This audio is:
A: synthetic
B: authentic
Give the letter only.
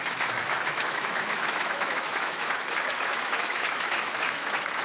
A